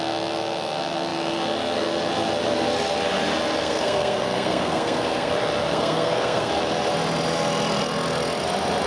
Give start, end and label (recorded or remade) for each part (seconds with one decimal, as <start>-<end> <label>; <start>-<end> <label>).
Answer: 0.0-3.6 recorded; 3.6-5.3 remade; 5.3-5.7 recorded; 5.7-6.5 remade; 6.5-8.9 recorded